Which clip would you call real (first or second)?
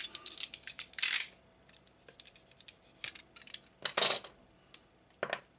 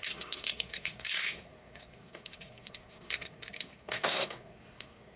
first